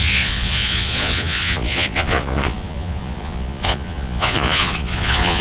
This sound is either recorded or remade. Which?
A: remade